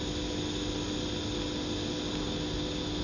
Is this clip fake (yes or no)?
no